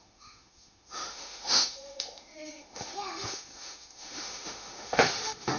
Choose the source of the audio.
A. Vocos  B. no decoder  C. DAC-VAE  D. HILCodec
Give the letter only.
C